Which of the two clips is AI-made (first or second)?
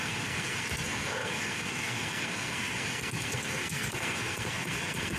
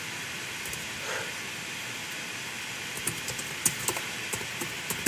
first